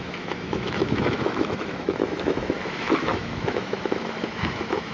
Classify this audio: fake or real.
fake